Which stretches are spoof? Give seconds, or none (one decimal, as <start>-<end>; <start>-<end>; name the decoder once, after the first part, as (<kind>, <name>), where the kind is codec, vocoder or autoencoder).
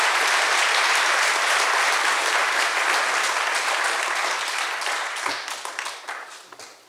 none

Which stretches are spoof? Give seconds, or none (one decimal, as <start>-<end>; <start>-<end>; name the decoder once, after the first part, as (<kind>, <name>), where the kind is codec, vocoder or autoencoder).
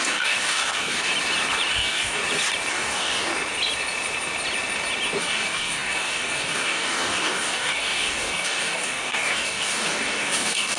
0.0-1.1 (codec, DAC); 1.7-2.2; 2.7-3.3; 5.2-10.8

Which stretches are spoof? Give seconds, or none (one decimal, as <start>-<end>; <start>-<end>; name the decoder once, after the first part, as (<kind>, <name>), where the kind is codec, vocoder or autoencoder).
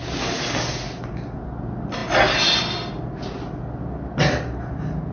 none